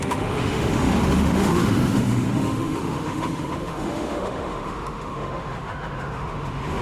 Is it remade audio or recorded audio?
remade